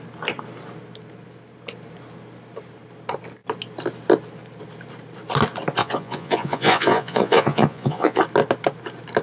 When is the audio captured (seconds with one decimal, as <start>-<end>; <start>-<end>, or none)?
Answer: 0.0-5.8; 8.2-9.2